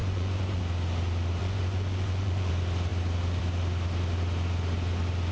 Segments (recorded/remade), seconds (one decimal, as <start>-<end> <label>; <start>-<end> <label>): 0.0-0.6 remade; 0.6-1.4 recorded; 1.4-2.5 remade; 2.5-5.3 recorded